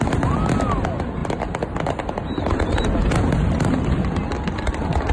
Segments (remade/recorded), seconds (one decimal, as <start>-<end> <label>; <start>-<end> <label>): 0.0-5.1 recorded